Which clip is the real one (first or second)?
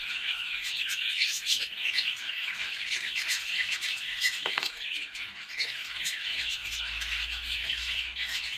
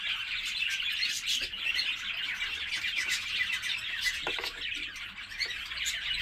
second